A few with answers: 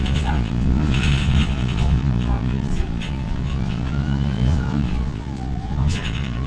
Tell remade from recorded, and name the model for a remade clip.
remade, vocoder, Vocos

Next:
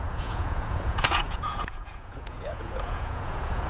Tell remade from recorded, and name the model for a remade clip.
remade, vocoder, Vocos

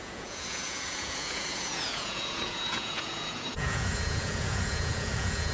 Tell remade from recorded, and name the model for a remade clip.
remade, vocoder, Vocos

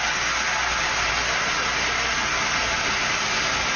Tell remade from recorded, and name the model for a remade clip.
recorded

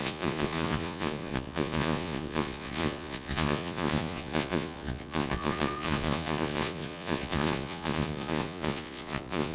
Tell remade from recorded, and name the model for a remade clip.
remade, vocoder, Vocos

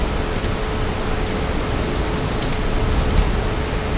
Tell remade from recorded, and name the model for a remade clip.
recorded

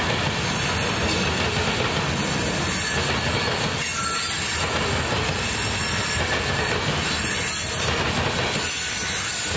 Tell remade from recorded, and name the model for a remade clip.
recorded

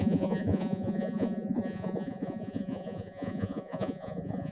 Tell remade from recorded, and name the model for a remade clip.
remade, vocoder, Vocos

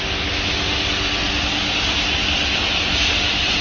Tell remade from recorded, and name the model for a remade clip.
recorded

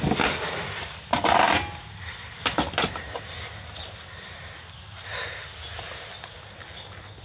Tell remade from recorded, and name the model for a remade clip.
recorded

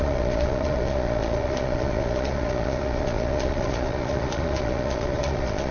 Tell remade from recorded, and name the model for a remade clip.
remade, vocoder, Vocos